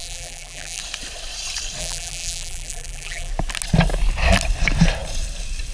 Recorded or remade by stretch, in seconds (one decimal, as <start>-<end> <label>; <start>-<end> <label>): 0.0-0.8 remade; 0.8-1.8 recorded; 1.8-3.3 remade; 3.3-5.7 recorded